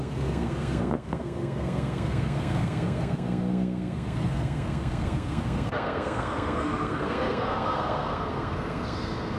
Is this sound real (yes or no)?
no